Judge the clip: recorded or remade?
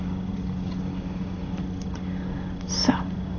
recorded